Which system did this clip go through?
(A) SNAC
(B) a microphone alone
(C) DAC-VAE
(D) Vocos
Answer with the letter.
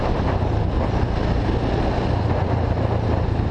B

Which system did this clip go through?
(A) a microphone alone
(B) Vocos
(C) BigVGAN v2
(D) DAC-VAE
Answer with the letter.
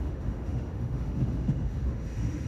D